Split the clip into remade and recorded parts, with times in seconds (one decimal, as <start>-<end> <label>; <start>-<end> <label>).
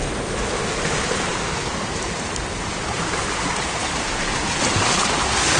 0.0-0.6 recorded; 0.6-5.6 remade